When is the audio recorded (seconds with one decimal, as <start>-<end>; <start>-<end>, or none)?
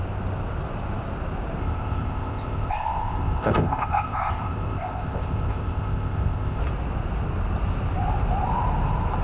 0.0-1.6; 6.6-9.2